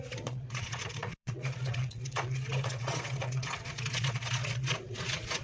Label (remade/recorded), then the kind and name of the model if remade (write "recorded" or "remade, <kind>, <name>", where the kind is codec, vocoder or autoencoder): remade, vocoder, Vocos